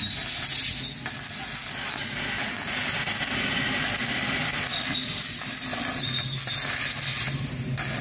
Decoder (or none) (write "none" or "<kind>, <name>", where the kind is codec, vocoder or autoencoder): none